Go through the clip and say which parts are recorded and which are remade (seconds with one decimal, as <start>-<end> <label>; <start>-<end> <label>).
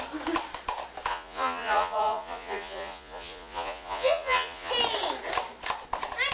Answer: 0.0-1.1 recorded; 1.1-4.7 remade; 4.7-6.3 recorded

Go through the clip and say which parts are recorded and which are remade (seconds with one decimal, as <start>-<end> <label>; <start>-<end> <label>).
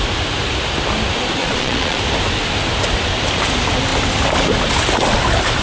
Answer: 0.0-1.4 recorded; 1.4-2.0 remade; 2.0-5.6 recorded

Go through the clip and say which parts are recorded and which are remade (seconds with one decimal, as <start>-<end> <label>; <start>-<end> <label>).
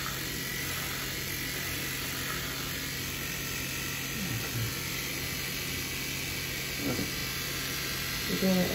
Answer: 0.0-8.7 recorded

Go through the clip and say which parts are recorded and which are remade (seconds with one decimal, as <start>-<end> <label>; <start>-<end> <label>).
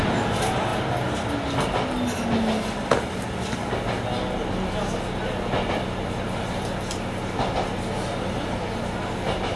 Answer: 0.0-9.6 recorded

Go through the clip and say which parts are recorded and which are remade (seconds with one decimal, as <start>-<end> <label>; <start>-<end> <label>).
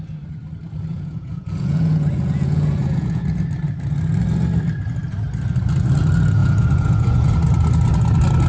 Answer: 0.0-0.9 recorded; 0.9-3.2 remade; 3.2-6.4 recorded; 6.4-7.3 remade; 7.3-8.5 recorded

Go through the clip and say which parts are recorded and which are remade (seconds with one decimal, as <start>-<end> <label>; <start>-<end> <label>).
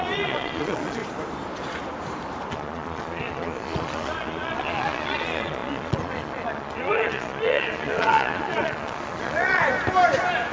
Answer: 0.0-1.0 remade; 1.0-2.5 recorded; 2.5-9.6 remade; 9.6-10.5 recorded